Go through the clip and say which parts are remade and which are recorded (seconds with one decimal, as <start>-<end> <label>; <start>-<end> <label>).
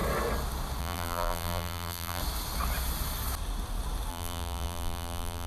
0.0-0.8 recorded; 0.8-2.2 remade; 2.2-4.1 recorded; 4.1-5.5 remade